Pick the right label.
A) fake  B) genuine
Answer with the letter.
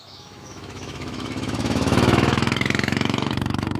A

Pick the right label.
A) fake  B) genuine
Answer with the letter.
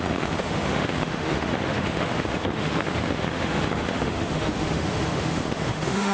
A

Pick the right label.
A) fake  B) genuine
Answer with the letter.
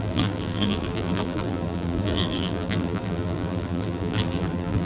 A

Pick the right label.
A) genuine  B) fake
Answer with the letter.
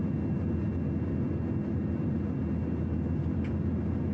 A